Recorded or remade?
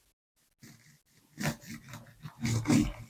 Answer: recorded